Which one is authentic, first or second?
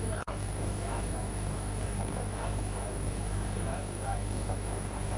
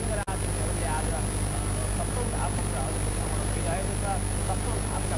second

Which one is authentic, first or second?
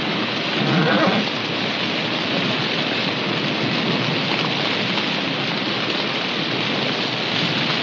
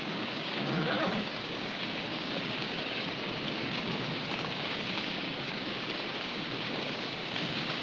first